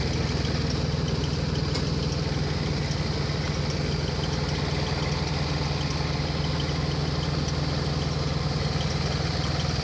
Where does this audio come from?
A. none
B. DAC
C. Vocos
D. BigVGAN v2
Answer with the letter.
A